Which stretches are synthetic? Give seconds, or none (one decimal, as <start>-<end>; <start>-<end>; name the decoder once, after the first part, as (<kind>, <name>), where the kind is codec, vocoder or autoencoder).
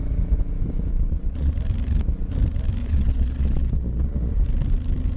0.9-1.5 (vocoder, Vocos); 2.8-4.3